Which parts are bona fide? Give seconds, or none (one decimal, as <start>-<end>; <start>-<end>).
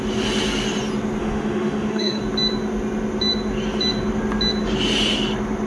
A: 0.0-1.2; 2.2-5.7